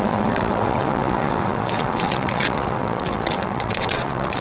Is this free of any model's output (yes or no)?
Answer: no